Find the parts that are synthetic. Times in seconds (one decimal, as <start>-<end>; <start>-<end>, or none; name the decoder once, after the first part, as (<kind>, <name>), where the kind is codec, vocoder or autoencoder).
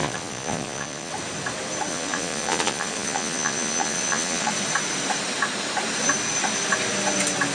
0.0-1.1 (vocoder, Vocos); 1.9-4.5